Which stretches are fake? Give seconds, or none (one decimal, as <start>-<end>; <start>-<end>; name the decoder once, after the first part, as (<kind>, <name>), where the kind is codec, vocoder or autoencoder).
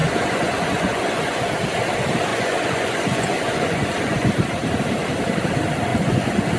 0.0-1.5 (vocoder, Vocos); 2.3-4.3; 5.9-6.6